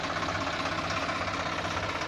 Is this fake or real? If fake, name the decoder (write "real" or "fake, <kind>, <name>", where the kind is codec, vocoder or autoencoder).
real